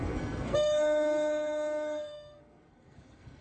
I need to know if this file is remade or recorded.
remade